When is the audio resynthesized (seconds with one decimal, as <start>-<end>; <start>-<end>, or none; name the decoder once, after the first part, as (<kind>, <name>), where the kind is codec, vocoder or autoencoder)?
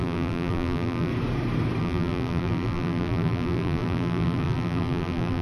0.0-1.1 (vocoder, BigVGAN v2); 1.8-5.4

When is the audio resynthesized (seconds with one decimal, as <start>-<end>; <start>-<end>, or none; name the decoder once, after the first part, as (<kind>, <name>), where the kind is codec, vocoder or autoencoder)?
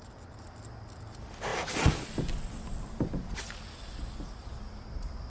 none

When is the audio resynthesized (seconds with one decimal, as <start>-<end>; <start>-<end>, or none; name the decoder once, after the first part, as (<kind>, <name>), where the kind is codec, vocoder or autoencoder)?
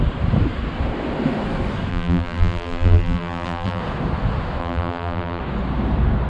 1.9-3.8 (vocoder, BigVGAN v2); 4.6-5.4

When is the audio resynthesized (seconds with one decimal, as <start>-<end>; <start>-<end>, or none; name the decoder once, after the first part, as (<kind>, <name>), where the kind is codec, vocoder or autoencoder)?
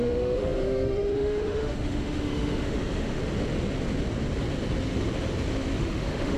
0.0-3.2 (autoencoder, DAC-VAE); 5.8-6.4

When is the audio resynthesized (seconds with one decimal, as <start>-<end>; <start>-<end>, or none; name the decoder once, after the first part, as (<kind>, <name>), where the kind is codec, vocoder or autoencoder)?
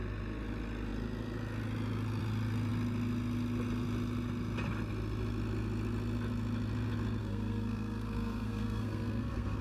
7.2-9.6 (codec, SNAC)